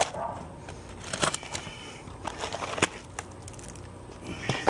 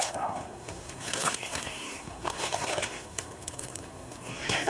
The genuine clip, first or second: first